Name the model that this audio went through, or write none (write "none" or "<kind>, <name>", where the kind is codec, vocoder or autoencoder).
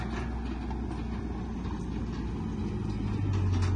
none